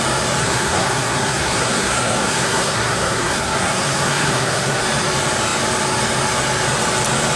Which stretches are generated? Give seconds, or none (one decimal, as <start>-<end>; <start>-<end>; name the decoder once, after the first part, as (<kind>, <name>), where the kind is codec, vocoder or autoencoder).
0.4-4.8 (codec, SNAC)